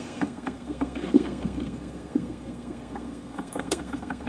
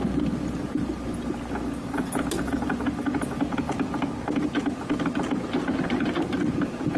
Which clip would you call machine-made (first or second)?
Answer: first